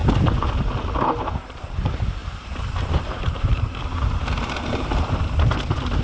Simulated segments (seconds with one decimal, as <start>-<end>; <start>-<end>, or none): 1.3-6.0